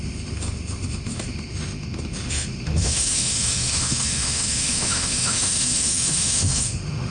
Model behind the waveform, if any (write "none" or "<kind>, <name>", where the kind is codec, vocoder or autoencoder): autoencoder, DAC-VAE